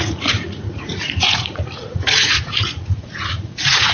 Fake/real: fake